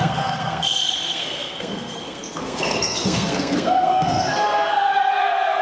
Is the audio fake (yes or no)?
yes